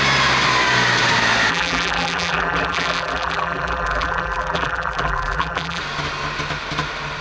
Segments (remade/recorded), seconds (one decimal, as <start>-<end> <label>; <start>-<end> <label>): 0.0-1.5 recorded; 1.5-5.8 remade; 5.8-7.2 recorded